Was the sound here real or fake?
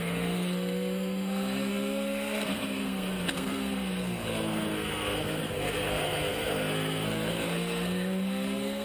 fake